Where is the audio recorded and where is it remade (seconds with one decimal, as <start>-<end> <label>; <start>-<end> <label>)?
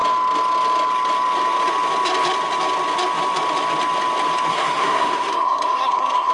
0.0-4.5 recorded; 4.5-6.3 remade